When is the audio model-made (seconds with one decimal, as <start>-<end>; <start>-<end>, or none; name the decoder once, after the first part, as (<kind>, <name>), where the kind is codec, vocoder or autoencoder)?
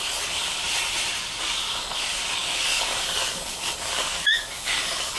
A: 0.0-0.6 (codec, DAC); 1.4-5.2